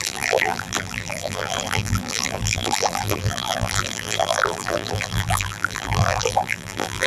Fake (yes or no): yes